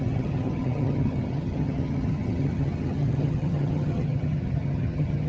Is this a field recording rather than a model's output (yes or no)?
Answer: no